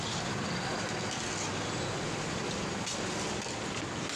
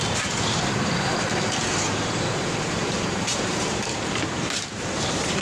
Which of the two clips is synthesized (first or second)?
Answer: second